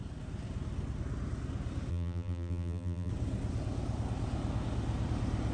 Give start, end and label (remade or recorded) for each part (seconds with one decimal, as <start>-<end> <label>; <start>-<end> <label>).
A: 0.0-1.9 recorded; 1.9-3.1 remade; 3.1-5.5 recorded